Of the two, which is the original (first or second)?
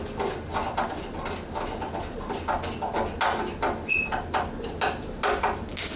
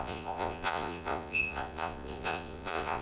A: first